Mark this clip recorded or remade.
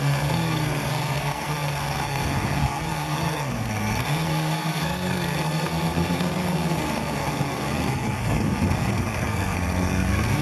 remade